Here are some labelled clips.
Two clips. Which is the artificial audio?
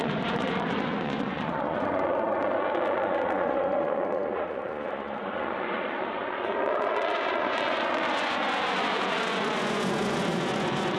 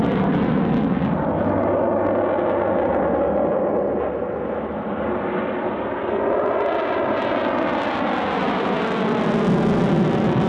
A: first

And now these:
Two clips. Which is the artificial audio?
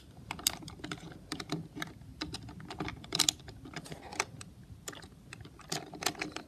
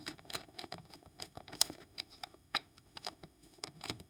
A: second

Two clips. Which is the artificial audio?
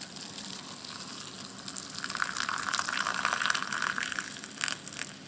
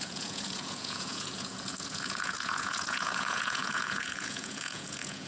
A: second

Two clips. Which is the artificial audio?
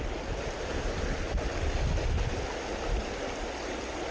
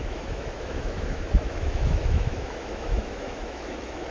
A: second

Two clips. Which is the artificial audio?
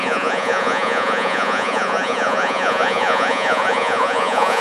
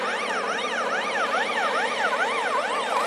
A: first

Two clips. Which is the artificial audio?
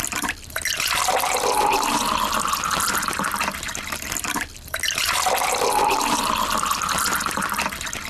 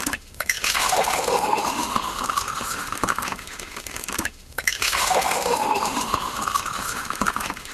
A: second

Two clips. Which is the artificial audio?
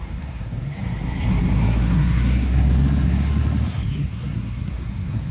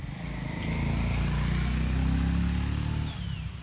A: first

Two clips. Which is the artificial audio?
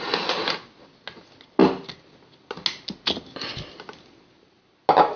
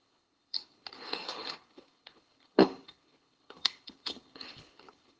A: second